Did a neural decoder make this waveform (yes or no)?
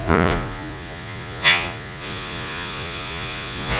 yes